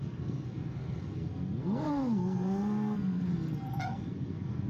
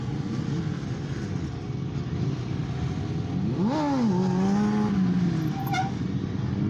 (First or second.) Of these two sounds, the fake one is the first